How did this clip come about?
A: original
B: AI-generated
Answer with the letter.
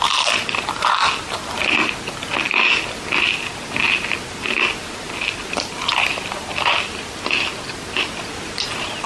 A